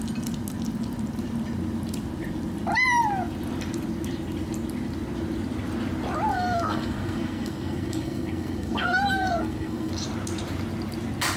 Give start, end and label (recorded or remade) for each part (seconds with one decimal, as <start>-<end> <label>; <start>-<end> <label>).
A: 0.0-6.3 recorded; 6.3-9.9 remade; 9.9-11.4 recorded